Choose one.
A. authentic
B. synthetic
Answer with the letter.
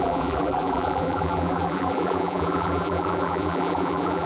B